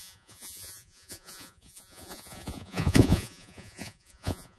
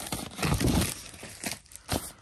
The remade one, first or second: first